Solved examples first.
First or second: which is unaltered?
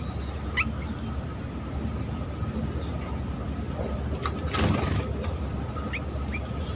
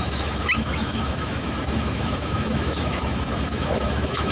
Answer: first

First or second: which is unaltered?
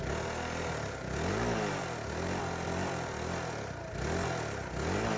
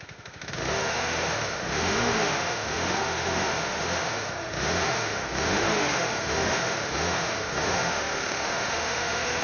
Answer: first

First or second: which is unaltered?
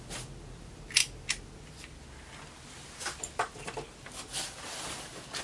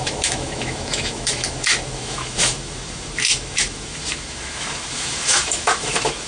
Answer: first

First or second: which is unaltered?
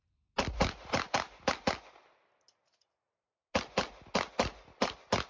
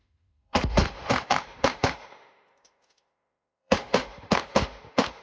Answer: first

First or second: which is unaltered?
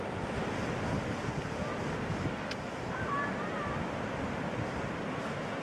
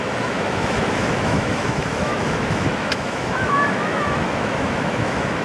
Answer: first